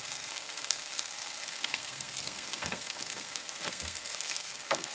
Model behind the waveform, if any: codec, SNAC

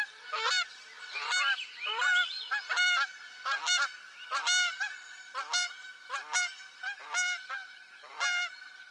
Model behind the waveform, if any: none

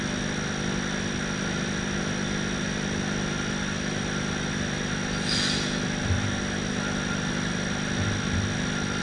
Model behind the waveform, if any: none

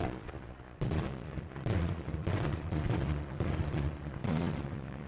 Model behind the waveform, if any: vocoder, Vocos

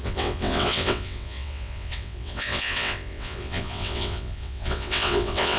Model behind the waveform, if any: vocoder, WaveNeXt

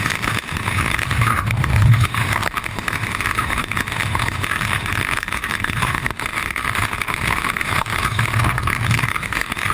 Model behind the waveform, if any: autoencoder, DAC-VAE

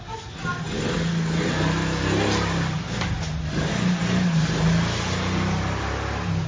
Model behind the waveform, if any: none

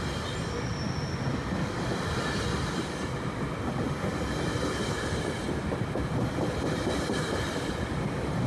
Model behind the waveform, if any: none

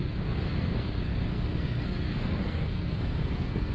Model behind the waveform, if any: codec, SNAC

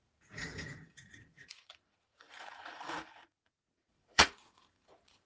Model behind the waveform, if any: vocoder, Vocos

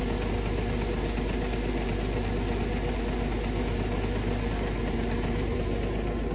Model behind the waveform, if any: none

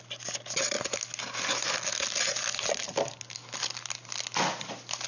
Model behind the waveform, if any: none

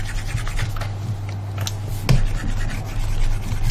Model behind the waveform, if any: none